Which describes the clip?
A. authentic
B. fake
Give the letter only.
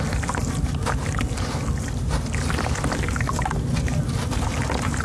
A